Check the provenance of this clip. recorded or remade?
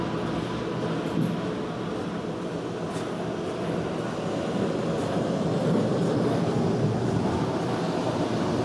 recorded